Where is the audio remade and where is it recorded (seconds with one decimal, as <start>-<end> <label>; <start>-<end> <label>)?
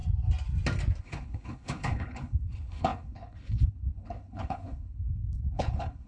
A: 0.0-1.0 recorded; 1.0-6.1 remade